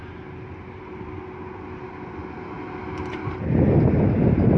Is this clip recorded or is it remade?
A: recorded